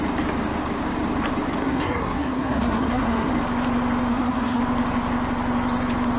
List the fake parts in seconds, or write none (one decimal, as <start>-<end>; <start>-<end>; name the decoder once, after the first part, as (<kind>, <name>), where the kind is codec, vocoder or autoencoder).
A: 1.6-3.3 (codec, SNAC); 4.1-4.6